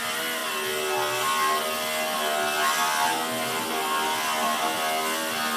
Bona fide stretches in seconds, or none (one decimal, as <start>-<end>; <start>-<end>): 0.0-5.6